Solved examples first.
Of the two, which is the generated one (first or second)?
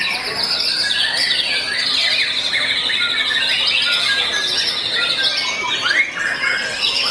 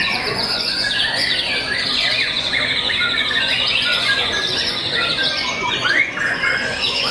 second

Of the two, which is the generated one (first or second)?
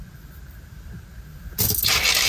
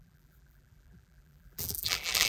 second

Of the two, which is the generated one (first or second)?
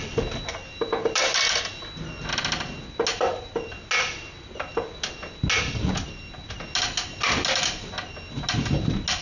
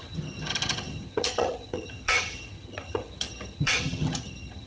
second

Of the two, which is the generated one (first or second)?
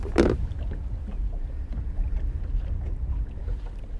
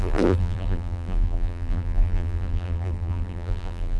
second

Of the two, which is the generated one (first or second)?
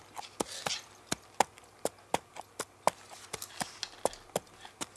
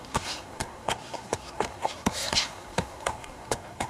second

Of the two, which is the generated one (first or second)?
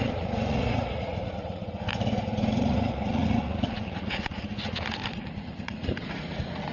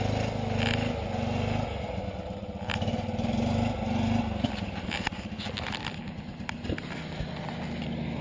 first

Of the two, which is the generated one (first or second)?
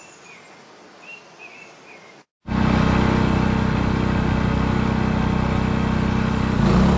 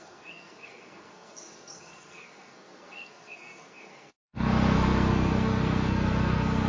second